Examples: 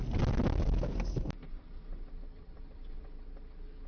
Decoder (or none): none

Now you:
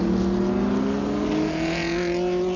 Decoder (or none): none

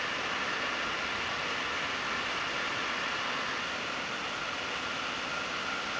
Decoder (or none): none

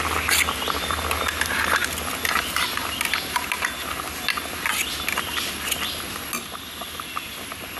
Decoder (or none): none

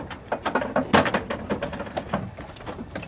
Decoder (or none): none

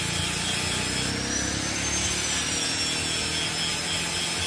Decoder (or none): none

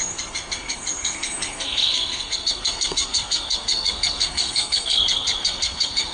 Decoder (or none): codec, SNAC